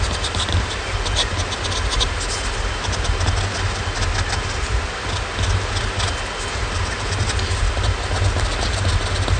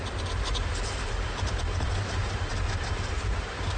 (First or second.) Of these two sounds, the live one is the first